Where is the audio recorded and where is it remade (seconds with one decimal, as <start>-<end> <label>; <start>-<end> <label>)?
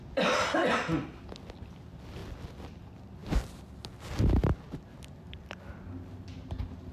0.0-6.9 recorded